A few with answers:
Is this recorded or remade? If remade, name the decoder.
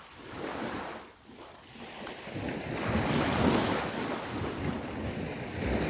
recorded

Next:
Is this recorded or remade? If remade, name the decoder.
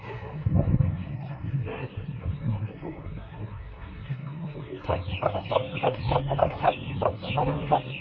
remade, codec, SNAC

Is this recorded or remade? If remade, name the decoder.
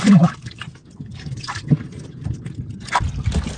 recorded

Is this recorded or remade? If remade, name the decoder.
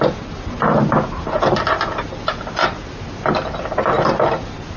recorded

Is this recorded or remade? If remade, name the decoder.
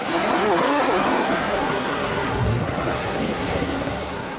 remade, codec, SNAC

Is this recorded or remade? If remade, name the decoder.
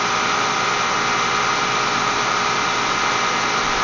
recorded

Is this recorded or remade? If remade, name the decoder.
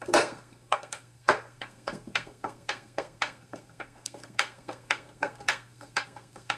remade, codec, SNAC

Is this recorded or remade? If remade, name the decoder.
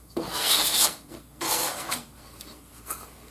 remade, codec, SNAC